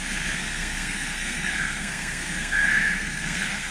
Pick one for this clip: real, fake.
fake